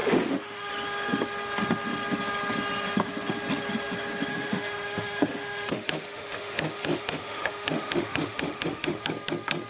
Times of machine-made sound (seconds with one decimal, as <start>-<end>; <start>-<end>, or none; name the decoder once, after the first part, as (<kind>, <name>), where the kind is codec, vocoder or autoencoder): 0.0-0.7 (autoencoder, DAC-VAE); 4.3-9.0